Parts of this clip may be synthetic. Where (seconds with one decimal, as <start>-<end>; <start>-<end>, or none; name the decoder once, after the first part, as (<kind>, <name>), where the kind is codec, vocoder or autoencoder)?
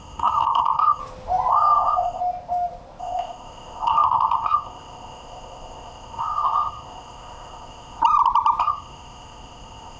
0.0-1.0 (codec, ZipCodec); 1.5-2.2; 3.0-8.0; 8.6-10.0